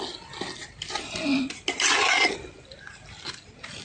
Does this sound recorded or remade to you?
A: recorded